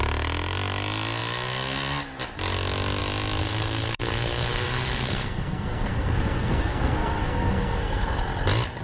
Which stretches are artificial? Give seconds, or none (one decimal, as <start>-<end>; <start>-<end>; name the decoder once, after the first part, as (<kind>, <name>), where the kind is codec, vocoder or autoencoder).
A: 3.4-8.2 (codec, SNAC)